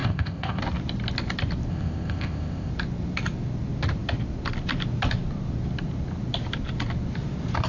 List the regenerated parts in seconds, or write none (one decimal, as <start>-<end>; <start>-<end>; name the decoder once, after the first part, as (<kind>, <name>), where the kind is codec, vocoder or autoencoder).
0.0-0.6 (codec, ZipCodec); 1.7-2.7